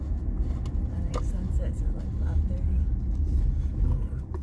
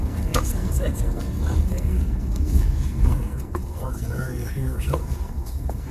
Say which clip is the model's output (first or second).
second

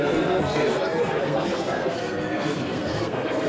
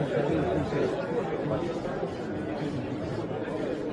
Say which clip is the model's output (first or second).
first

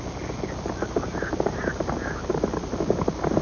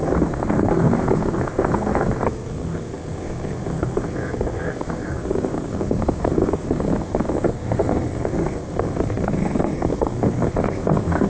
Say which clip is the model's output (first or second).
second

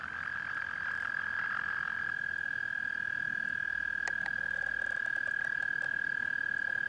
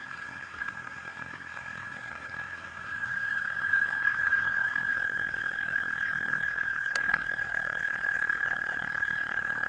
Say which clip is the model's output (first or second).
second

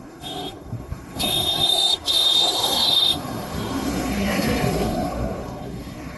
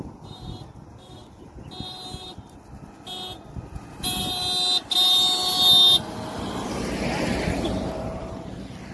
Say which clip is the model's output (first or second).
first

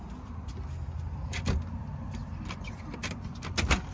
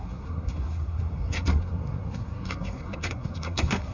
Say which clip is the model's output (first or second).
second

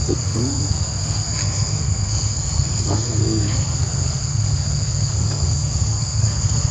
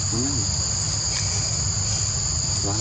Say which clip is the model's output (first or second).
first